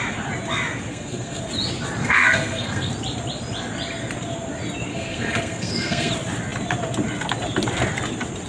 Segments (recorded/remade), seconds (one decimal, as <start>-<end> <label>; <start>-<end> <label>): 0.0-0.9 recorded; 0.9-1.4 remade; 1.4-2.0 recorded; 2.0-2.9 remade; 2.9-4.9 recorded; 4.9-6.1 remade; 6.1-8.5 recorded